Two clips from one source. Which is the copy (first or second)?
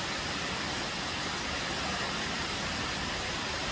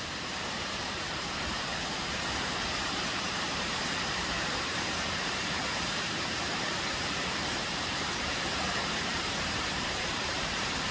second